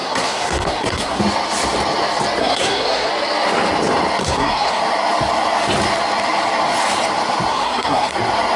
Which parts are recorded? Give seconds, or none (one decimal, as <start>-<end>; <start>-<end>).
1.2-2.4; 3.1-4.2; 4.8-7.5; 8.1-8.6